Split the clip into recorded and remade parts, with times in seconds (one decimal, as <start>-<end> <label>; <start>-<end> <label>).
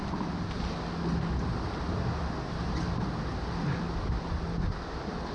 0.0-5.3 recorded